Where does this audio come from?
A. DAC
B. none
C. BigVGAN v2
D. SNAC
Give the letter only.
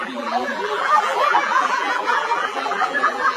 C